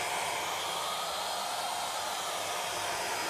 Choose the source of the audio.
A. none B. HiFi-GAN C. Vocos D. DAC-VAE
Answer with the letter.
A